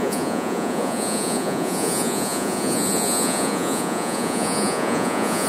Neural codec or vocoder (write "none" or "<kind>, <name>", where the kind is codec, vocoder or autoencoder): vocoder, Vocos